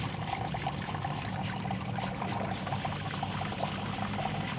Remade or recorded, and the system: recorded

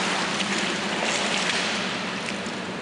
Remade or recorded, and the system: recorded